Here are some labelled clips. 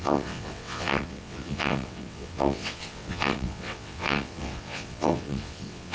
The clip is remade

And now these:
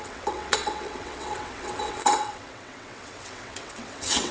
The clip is remade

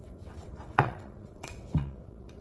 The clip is remade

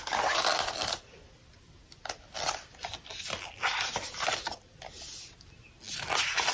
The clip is recorded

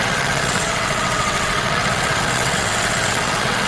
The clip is remade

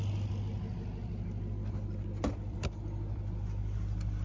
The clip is recorded